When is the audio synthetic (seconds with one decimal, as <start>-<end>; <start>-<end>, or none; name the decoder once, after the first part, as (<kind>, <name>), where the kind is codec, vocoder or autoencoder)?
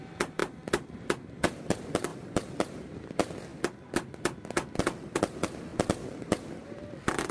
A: 0.0-7.3 (vocoder, BigVGAN v2)